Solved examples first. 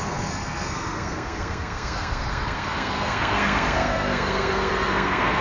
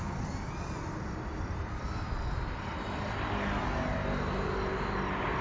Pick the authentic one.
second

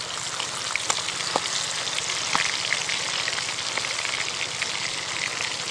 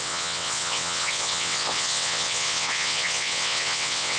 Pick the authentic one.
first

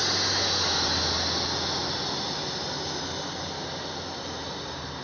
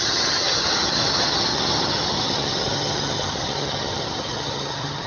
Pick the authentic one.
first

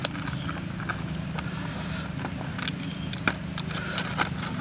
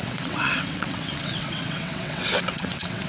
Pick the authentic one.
first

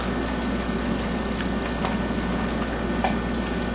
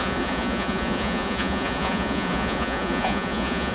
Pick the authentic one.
first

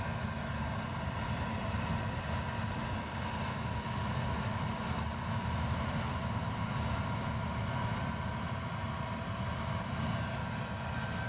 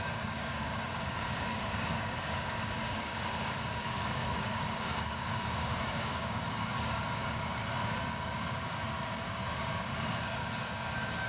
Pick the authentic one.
first